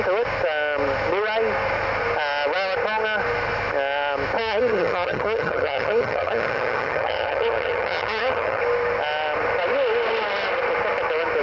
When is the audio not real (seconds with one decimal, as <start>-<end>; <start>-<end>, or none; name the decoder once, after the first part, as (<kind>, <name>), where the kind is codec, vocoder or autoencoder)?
4.4-8.6 (vocoder, HiFi-GAN)